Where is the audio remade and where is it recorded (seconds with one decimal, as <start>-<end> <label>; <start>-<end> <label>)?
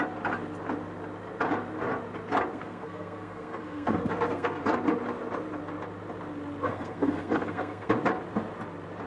0.0-2.5 recorded; 2.5-4.6 remade; 4.6-6.7 recorded; 6.7-7.9 remade; 7.9-9.1 recorded